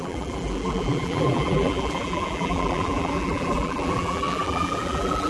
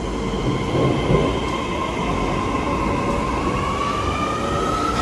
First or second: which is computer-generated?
first